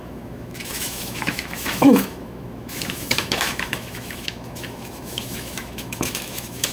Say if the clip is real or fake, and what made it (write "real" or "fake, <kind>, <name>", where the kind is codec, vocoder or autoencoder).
fake, autoencoder, DAC-VAE